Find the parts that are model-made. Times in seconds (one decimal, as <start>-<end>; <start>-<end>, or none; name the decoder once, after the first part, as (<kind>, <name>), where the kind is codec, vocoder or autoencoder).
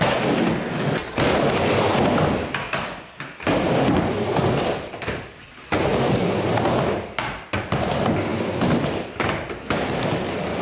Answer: none